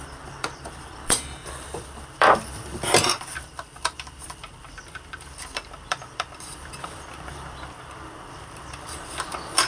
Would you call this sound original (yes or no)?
no